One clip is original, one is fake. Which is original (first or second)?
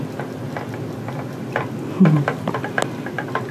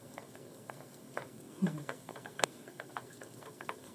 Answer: first